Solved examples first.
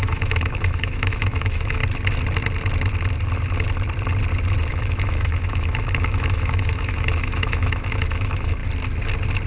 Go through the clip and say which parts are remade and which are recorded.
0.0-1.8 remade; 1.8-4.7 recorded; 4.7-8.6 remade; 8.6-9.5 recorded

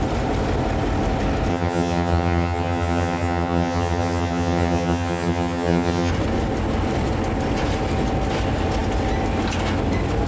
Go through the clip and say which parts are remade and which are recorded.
0.0-1.5 recorded; 1.5-6.1 remade; 6.1-10.3 recorded

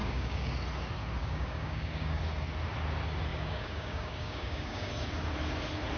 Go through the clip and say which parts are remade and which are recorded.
0.0-0.5 remade; 0.5-1.2 recorded; 1.2-2.2 remade; 2.2-3.3 recorded; 3.3-4.9 remade; 4.9-6.0 recorded

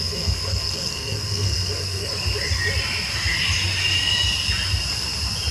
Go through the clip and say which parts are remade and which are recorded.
0.0-2.1 remade; 2.1-5.5 recorded

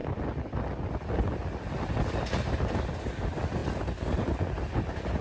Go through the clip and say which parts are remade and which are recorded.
0.0-5.2 recorded

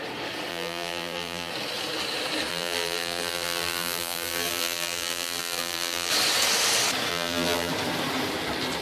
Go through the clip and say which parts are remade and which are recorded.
0.0-0.5 recorded; 0.5-1.5 remade; 1.5-2.5 recorded; 2.5-6.1 remade; 6.1-7.1 recorded; 7.1-7.7 remade; 7.7-8.8 recorded

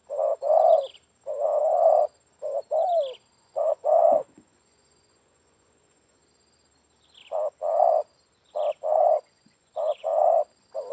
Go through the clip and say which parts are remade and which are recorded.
0.0-3.4 recorded; 3.4-6.2 remade; 6.2-9.0 recorded; 9.0-10.1 remade; 10.1-10.9 recorded